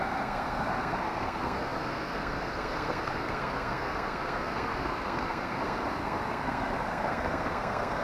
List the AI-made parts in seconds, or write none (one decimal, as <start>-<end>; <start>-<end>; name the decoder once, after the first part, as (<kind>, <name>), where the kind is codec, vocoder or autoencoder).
0.0-8.0 (codec, SNAC)